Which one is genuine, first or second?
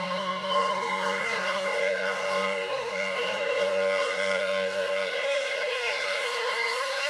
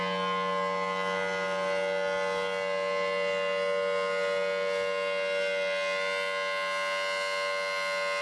second